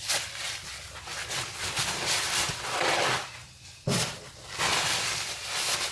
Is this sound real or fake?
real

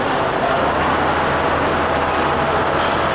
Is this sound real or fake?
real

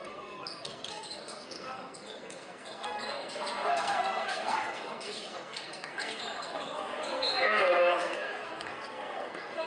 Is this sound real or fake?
fake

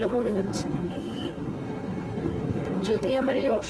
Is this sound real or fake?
fake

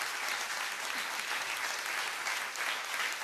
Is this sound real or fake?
real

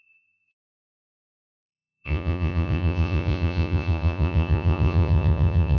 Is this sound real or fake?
fake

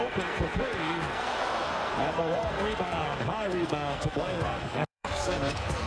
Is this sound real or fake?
fake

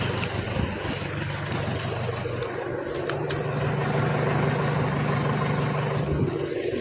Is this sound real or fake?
real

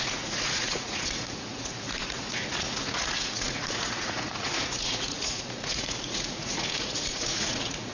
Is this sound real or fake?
fake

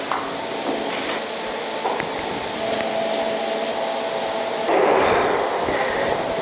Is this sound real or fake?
real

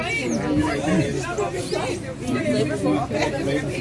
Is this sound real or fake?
real